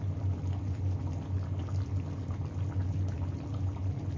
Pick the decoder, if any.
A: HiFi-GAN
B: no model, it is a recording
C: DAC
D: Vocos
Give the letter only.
B